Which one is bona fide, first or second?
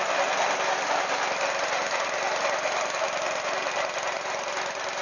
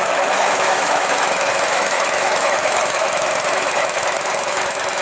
first